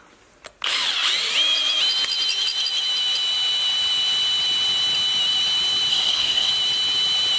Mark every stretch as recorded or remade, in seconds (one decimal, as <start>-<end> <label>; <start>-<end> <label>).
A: 0.0-5.9 recorded; 5.9-6.5 remade; 6.5-7.4 recorded